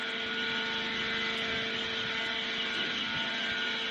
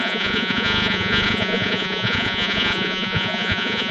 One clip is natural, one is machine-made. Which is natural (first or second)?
first